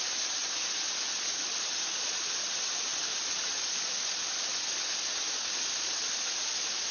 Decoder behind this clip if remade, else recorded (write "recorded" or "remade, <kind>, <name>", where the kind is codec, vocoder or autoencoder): recorded